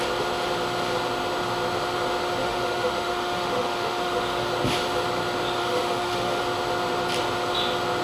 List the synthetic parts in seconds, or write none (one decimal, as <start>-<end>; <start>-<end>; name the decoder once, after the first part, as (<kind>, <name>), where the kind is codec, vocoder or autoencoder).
2.4-4.5 (autoencoder, DAC-VAE); 5.6-6.4